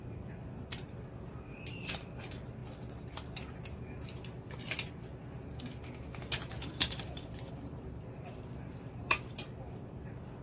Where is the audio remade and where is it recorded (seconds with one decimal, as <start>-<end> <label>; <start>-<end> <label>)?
0.0-6.5 recorded; 6.5-9.4 remade; 9.4-10.4 recorded

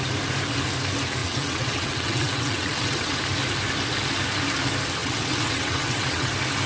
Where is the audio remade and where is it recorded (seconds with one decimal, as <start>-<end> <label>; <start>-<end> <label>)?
0.0-1.2 recorded; 1.2-3.2 remade; 3.2-5.0 recorded; 5.0-6.3 remade; 6.3-6.7 recorded

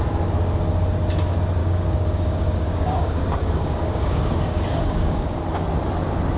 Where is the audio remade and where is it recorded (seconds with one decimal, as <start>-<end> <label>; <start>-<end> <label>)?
0.0-1.6 recorded; 1.6-5.4 remade; 5.4-6.4 recorded